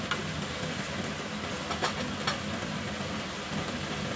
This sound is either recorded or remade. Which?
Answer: recorded